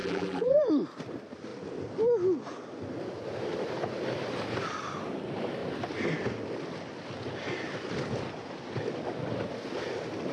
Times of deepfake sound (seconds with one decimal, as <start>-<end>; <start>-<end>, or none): 0.0-0.6